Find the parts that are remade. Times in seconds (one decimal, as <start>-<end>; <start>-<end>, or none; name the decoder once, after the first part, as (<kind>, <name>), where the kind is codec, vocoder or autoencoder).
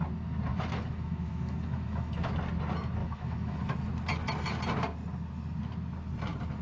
0.5-2.3 (autoencoder, DAC-VAE); 3.0-3.6